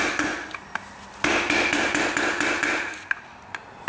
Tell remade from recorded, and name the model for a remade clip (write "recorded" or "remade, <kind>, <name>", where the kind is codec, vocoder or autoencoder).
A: recorded